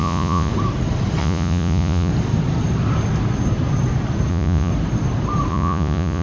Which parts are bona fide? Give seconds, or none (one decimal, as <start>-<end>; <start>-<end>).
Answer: 0.5-1.2; 2.1-4.3; 4.7-5.5